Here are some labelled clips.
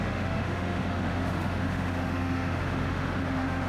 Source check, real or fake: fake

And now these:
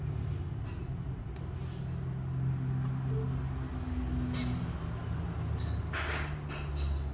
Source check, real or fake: real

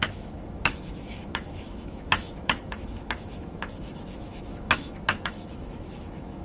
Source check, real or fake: fake